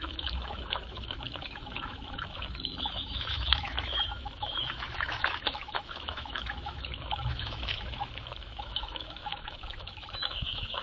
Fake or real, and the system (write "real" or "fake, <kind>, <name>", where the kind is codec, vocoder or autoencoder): fake, autoencoder, DAC-VAE